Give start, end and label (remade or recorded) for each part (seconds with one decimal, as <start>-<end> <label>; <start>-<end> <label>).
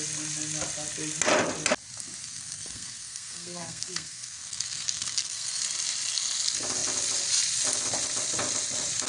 0.0-2.2 recorded; 2.2-5.6 remade; 5.6-9.1 recorded